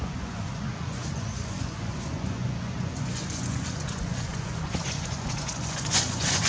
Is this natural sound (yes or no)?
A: no